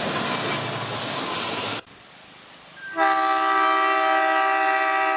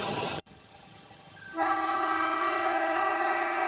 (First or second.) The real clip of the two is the first